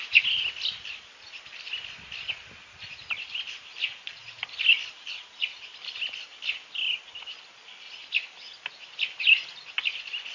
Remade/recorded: recorded